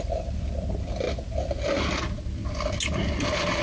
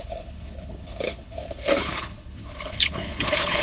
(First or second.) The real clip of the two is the first